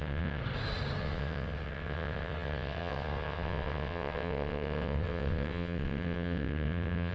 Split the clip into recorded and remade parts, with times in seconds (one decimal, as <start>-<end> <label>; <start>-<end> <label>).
0.0-0.4 remade; 0.4-1.0 recorded; 1.0-7.1 remade